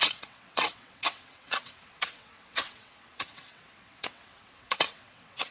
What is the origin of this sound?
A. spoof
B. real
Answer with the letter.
A